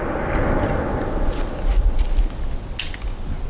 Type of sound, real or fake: real